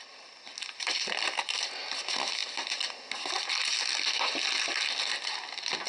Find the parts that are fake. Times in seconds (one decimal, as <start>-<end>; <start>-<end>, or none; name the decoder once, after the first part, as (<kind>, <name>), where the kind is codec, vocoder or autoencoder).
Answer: none